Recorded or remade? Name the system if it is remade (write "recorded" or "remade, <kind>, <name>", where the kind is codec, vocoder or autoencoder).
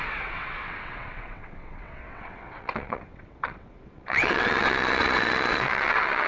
remade, vocoder, WaveNeXt